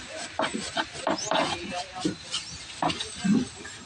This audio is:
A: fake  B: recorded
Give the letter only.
B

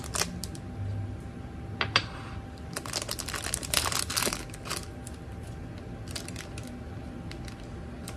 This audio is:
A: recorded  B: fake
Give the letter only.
A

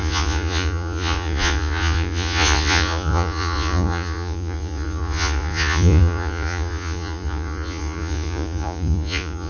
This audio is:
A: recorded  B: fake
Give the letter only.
B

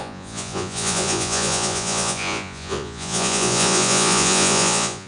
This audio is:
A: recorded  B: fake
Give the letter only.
B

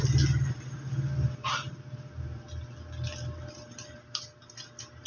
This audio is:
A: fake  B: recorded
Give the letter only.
B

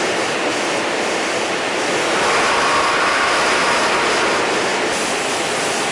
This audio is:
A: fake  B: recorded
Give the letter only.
B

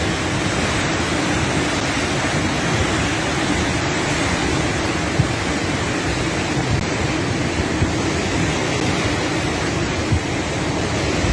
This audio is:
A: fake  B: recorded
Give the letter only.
B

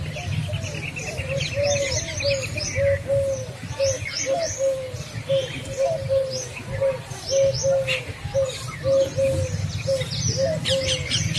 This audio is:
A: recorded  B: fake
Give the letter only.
A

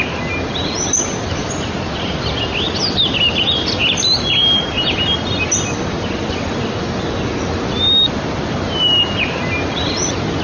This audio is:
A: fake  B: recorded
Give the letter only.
B